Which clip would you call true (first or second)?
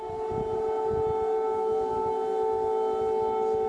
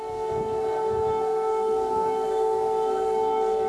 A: first